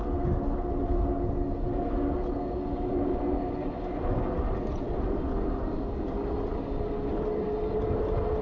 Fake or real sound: real